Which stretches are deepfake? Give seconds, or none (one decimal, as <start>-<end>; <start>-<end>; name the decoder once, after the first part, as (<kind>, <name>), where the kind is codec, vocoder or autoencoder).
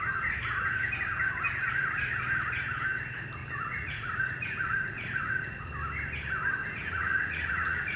3.4-5.7 (vocoder, Vocos); 6.6-8.0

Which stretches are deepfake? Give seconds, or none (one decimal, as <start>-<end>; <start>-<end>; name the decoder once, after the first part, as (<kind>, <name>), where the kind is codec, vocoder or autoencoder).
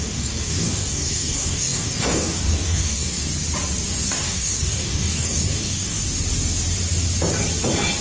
0.0-3.3 (codec, DAC); 3.9-6.0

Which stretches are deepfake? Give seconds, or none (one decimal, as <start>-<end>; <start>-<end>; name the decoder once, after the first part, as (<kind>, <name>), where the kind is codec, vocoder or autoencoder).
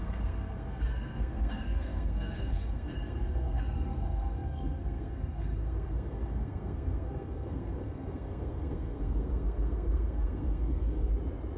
0.0-11.1 (codec, SNAC)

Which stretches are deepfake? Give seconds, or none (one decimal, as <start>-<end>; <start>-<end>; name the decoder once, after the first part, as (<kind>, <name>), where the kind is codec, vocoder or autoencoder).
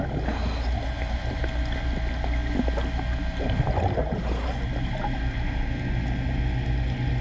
none